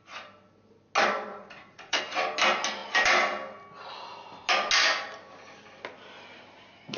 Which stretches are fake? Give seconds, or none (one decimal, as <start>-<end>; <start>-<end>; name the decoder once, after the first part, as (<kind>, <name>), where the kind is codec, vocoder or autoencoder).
1.3-2.0 (vocoder, Vocos)